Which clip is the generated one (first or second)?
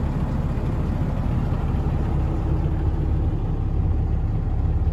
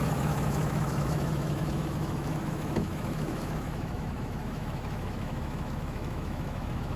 second